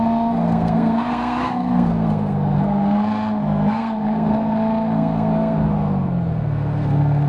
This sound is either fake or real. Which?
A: fake